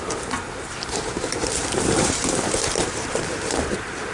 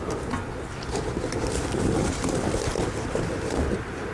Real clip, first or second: second